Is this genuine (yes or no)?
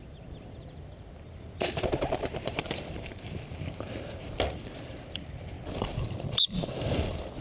no